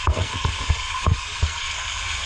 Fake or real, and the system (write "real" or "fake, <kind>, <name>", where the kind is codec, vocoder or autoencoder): fake, codec, SNAC